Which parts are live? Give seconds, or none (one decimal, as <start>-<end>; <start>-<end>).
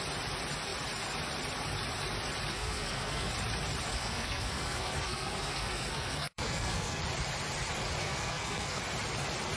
0.0-2.5; 3.3-3.9; 7.0-8.0; 8.8-9.6